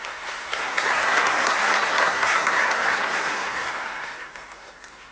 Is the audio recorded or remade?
remade